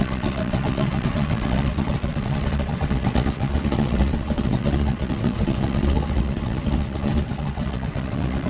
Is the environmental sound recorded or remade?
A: remade